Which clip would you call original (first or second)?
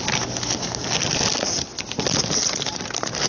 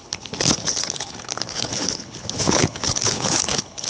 first